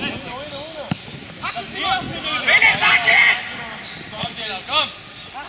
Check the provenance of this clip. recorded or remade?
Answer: recorded